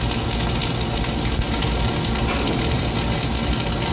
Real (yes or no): yes